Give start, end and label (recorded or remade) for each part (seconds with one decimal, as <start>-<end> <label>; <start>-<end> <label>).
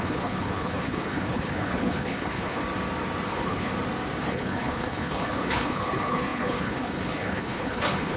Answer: 0.0-2.6 remade; 2.6-3.3 recorded; 3.3-3.7 remade; 3.7-4.2 recorded; 4.2-8.2 remade